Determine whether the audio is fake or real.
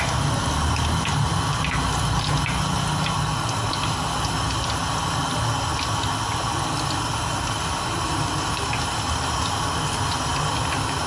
real